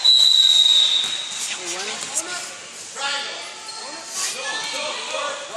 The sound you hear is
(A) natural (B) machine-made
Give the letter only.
A